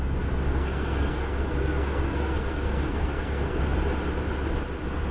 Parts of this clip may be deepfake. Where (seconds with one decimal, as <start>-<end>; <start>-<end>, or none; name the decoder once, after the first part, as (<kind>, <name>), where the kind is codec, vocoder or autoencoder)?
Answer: 0.5-3.6 (codec, SNAC)